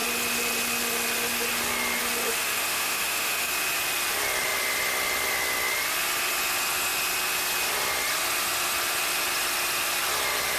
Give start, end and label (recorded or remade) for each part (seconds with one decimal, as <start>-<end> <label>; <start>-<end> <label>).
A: 0.0-2.4 recorded; 2.4-3.5 remade; 3.5-10.6 recorded